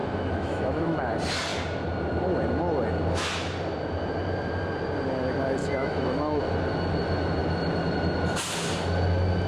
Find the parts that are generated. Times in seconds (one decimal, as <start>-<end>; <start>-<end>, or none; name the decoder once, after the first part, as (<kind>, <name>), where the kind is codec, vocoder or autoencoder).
0.0-1.0 (autoencoder, DAC-VAE); 5.6-6.4

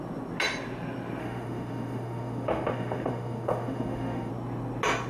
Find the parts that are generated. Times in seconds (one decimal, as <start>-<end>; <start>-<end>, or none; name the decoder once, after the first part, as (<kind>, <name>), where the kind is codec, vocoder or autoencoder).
1.2-4.3 (autoencoder, DAC-VAE)

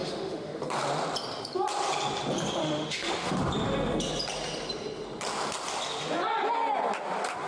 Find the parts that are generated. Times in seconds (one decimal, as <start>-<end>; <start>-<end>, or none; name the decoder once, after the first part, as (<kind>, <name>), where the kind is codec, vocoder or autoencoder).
0.0-0.6 (autoencoder, DAC-VAE); 2.6-3.4

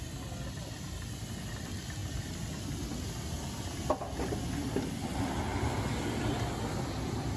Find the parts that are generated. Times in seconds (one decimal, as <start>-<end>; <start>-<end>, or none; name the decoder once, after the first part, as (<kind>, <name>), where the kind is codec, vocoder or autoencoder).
none

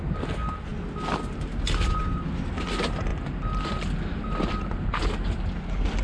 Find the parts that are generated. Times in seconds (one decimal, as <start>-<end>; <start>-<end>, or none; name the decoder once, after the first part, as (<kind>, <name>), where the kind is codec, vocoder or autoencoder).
none

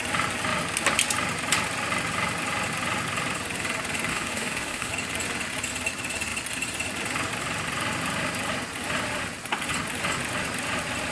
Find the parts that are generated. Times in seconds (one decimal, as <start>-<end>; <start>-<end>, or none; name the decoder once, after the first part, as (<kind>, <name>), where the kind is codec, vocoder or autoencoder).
4.1-4.9 (autoencoder, DAC-VAE)

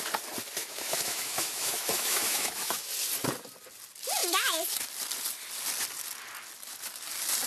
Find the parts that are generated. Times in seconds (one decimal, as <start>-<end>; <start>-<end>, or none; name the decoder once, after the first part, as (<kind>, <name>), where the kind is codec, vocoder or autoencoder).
0.6-2.9 (autoencoder, DAC-VAE)